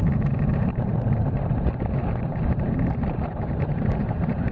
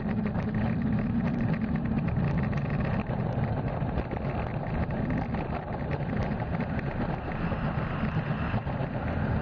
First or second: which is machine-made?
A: first